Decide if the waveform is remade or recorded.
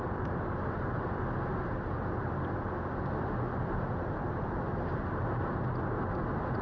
recorded